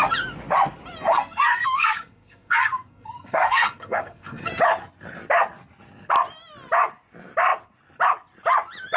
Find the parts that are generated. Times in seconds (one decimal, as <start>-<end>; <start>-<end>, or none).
1.1-4.5